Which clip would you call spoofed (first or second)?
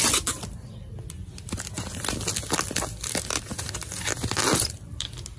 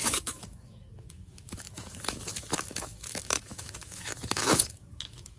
second